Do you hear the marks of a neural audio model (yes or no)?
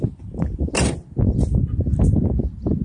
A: no